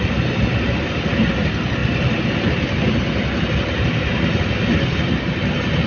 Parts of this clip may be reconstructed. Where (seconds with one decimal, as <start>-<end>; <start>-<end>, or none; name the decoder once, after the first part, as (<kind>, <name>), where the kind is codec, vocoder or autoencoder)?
none